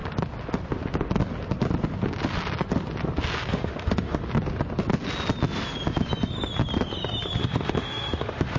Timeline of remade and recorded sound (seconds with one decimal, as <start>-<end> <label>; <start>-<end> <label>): 0.0-3.5 recorded; 3.5-4.3 remade; 4.3-7.4 recorded; 7.4-8.6 remade